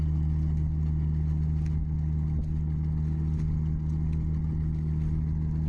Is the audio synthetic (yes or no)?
no